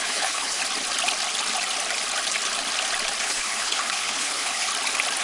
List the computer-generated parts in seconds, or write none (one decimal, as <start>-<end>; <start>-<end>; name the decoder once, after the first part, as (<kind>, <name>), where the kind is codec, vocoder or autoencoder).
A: 0.0-0.6 (codec, HILCodec); 3.2-4.7